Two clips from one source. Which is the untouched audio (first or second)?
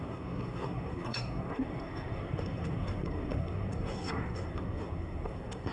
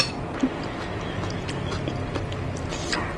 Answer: second